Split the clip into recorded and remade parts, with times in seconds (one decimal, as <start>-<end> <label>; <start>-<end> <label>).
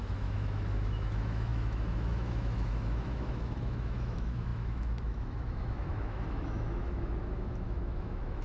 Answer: 0.0-8.4 remade